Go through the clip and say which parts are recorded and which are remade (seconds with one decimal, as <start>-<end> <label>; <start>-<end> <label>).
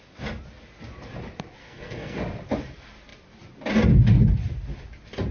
0.0-1.6 recorded; 1.6-2.2 remade; 2.2-5.3 recorded